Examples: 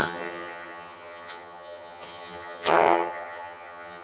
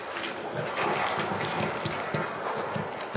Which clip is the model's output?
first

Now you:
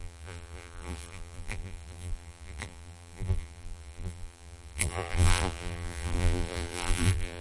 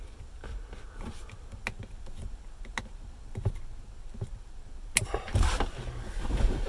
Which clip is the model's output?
first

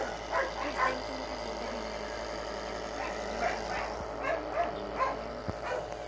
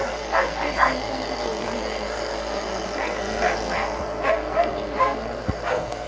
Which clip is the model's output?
second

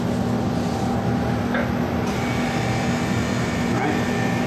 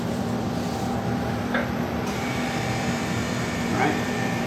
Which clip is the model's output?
second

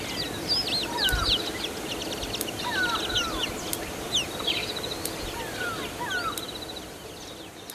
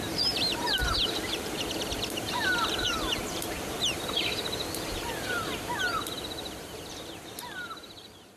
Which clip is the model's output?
second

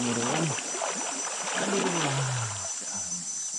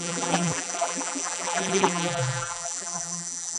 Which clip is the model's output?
second